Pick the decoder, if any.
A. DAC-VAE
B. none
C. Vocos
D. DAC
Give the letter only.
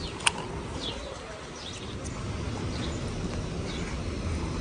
B